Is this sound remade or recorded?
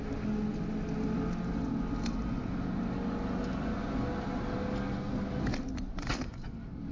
recorded